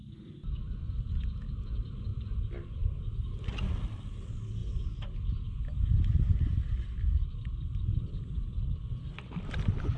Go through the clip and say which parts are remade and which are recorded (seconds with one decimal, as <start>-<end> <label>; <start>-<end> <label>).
0.0-10.0 recorded